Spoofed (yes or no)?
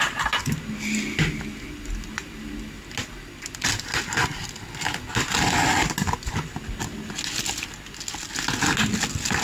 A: no